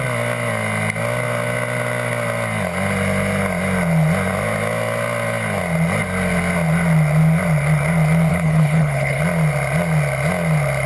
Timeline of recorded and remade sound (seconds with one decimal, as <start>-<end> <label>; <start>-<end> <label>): 0.0-8.3 recorded; 8.3-9.2 remade; 9.2-10.9 recorded